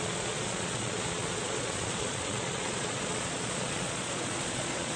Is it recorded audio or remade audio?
remade